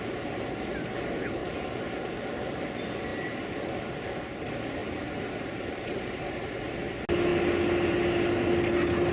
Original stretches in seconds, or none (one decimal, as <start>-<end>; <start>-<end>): 0.0-1.4; 2.1-4.8; 6.6-9.1